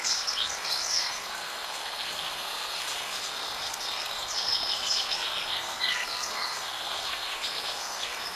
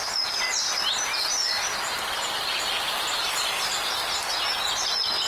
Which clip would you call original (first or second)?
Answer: second